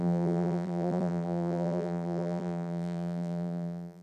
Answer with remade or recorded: remade